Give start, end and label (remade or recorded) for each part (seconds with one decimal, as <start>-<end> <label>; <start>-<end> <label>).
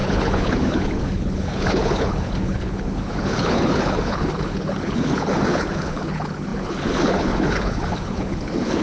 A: 0.0-8.8 remade